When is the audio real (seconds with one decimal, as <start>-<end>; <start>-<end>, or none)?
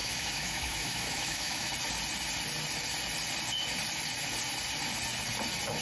1.7-5.8